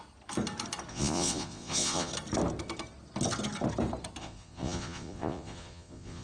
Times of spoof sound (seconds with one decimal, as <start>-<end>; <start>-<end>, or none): 0.9-2.1; 4.2-6.2